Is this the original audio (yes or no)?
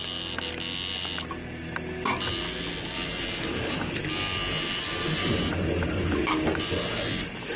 yes